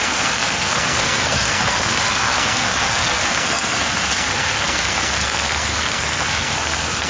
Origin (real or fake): fake